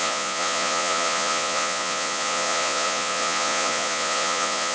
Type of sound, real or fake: fake